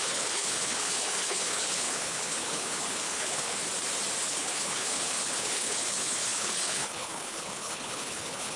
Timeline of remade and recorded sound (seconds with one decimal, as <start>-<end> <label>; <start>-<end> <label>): 0.0-3.6 remade; 3.6-4.2 recorded; 4.2-8.6 remade